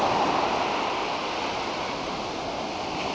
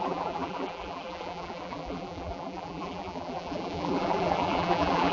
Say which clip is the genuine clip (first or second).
first